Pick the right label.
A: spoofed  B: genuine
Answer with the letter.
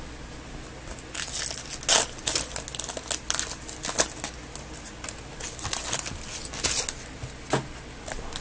B